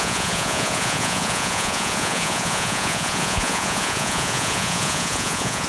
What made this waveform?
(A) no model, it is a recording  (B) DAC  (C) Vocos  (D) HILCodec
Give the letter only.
C